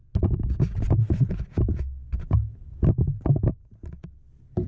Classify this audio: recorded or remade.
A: recorded